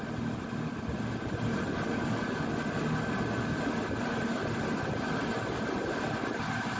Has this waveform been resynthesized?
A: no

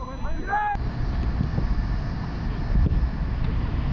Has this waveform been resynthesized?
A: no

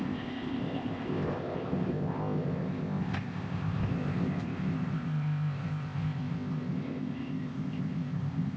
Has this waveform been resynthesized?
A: yes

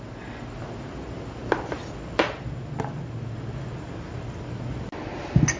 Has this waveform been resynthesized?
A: no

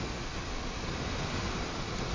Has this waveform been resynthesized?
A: no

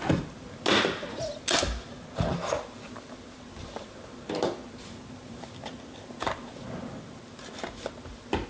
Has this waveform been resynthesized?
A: no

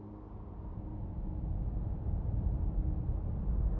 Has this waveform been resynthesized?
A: no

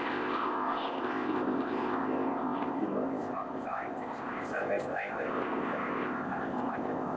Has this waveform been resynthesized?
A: yes